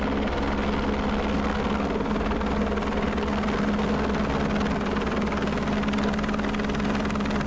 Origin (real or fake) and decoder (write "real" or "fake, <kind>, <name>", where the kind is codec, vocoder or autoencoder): real